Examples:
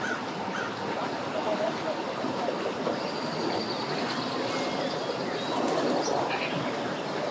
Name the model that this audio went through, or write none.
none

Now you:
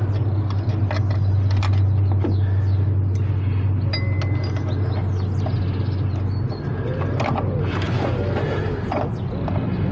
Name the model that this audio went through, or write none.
none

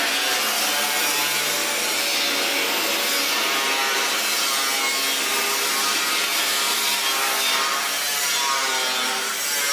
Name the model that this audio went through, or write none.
none